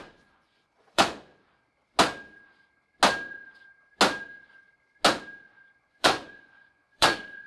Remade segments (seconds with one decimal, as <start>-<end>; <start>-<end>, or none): 0.0-1.3; 5.8-7.5